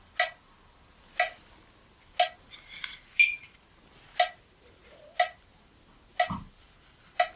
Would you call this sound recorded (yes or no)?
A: yes